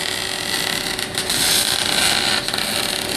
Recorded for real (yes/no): yes